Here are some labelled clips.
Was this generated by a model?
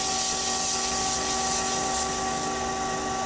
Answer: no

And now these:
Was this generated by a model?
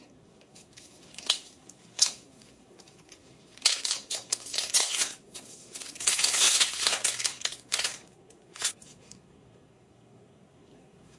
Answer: yes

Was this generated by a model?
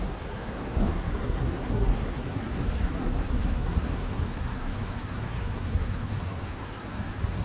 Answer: yes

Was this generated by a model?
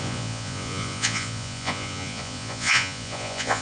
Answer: yes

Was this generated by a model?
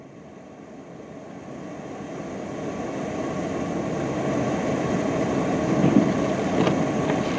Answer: no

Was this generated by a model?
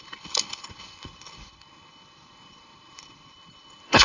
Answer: yes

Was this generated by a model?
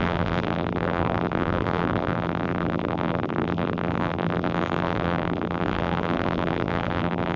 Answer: yes